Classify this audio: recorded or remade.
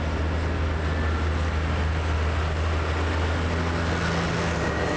recorded